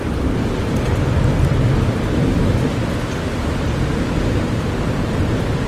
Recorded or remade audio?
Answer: recorded